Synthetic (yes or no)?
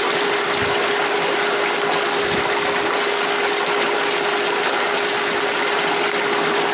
no